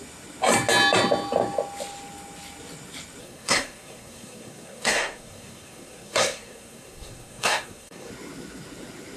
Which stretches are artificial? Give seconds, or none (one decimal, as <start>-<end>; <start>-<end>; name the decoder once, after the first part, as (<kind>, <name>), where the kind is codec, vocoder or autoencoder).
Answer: 3.2-8.1 (codec, SNAC)